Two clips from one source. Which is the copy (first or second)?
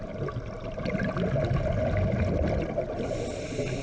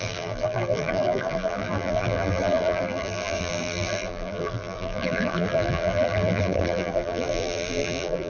second